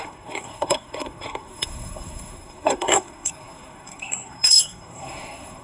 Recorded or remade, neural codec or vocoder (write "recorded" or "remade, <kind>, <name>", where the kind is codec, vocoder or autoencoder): remade, codec, SNAC